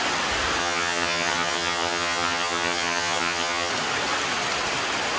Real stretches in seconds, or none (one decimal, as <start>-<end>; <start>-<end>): 0.0-0.6; 3.7-5.2